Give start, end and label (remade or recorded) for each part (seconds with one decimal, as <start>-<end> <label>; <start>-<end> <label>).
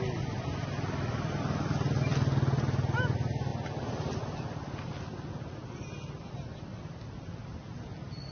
0.0-8.3 recorded